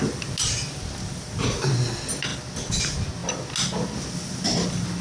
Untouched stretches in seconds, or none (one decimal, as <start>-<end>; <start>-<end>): 0.0-5.0